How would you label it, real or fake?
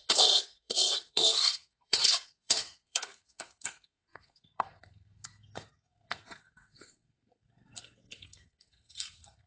fake